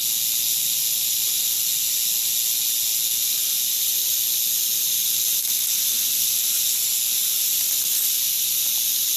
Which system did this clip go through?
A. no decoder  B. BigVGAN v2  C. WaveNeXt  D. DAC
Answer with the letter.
A